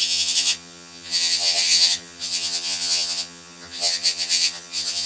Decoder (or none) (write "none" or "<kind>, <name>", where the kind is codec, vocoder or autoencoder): vocoder, HiFi-GAN